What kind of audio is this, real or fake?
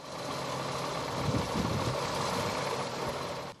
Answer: real